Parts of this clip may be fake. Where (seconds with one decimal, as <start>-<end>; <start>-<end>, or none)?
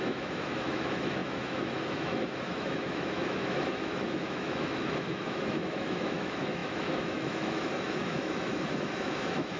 0.0-9.6